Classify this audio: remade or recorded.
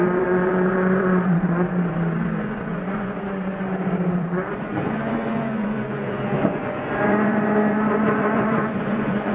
remade